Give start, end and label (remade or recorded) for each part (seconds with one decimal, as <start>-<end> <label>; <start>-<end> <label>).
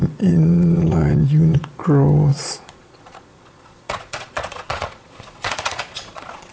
0.0-1.8 remade; 1.8-2.3 recorded; 2.3-6.5 remade